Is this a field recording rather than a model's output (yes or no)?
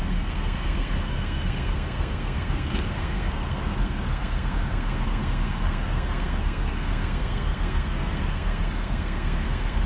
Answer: no